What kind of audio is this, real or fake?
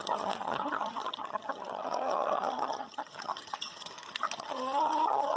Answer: fake